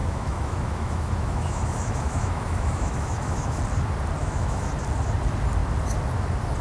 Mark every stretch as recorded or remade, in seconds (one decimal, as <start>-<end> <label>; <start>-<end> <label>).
0.0-3.6 remade; 3.6-4.2 recorded; 4.2-4.7 remade; 4.7-6.6 recorded